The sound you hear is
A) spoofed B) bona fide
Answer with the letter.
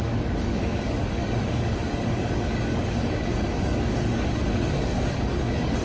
A